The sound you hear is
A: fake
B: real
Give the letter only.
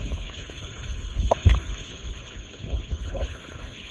A